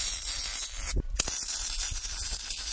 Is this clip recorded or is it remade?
recorded